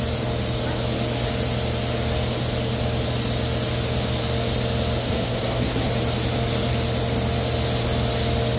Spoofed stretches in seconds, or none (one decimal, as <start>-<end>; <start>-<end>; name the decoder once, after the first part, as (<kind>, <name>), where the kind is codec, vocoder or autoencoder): 5.0-5.9 (codec, SNAC)